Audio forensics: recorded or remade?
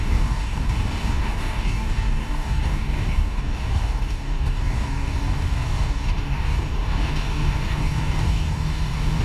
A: remade